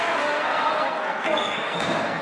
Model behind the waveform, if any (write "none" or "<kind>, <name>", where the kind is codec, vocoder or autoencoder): codec, SNAC